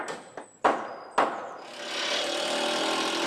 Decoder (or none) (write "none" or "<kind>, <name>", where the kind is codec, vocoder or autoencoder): none